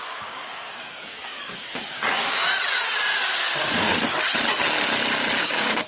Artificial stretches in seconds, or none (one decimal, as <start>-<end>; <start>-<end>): 0.0-2.4; 3.4-3.9; 5.4-5.9